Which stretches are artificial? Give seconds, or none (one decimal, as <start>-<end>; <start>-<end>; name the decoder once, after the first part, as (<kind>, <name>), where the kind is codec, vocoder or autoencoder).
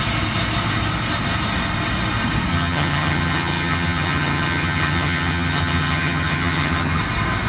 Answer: 2.5-7.0 (vocoder, HiFi-GAN)